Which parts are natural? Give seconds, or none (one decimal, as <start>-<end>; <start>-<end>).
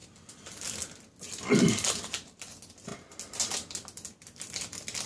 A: 0.0-5.1